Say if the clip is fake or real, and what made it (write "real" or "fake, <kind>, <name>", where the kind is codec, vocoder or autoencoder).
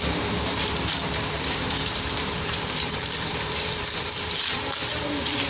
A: fake, vocoder, BigVGAN v2